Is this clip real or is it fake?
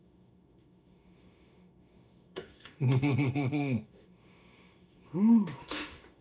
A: fake